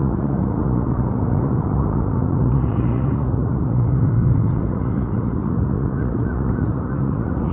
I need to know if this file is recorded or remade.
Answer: remade